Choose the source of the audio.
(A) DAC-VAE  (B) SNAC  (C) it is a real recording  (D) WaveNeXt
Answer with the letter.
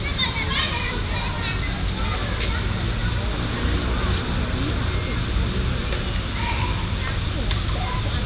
C